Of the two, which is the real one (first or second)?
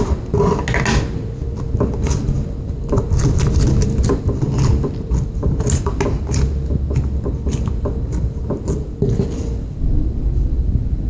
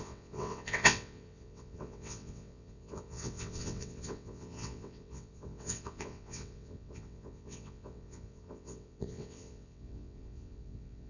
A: first